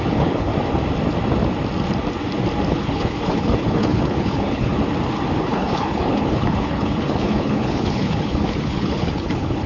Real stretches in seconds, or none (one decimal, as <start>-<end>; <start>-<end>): 0.5-2.7; 4.7-5.4